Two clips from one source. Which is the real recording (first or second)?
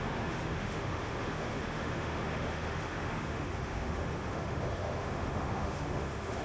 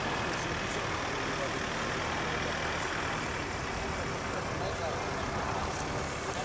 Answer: second